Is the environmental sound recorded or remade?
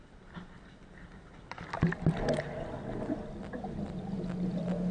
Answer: recorded